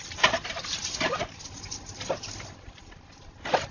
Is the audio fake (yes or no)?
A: no